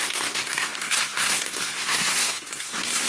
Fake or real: fake